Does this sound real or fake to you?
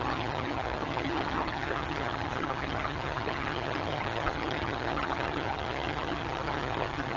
fake